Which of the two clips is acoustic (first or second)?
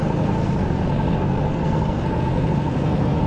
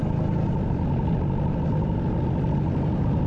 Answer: second